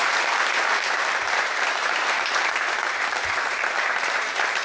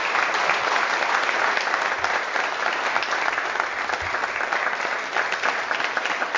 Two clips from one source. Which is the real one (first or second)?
second